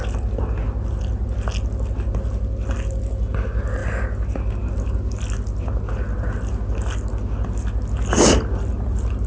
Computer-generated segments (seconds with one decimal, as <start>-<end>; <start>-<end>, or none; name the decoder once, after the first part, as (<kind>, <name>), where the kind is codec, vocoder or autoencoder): none